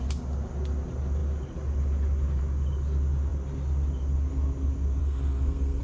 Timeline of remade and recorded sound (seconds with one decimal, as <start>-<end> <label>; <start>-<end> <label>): 0.0-5.0 recorded; 5.0-5.8 remade

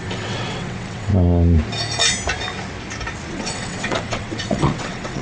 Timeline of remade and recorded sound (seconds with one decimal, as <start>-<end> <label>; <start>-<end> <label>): 0.0-1.1 remade; 1.1-3.3 recorded; 3.3-5.2 remade

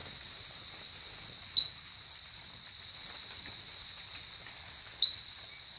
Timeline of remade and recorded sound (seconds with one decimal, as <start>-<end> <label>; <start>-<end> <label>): 0.0-5.8 recorded

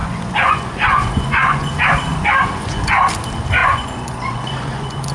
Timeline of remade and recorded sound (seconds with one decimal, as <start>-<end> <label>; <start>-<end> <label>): 0.0-1.7 remade; 1.7-2.1 recorded; 2.1-3.0 remade; 3.0-3.6 recorded; 3.6-5.1 remade